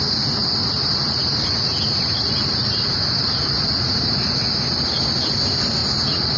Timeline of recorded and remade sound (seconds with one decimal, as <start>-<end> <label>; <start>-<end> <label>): 0.0-0.6 recorded; 0.6-4.4 remade; 4.4-5.8 recorded; 5.8-6.4 remade